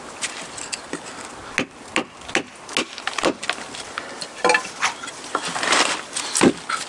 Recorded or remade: recorded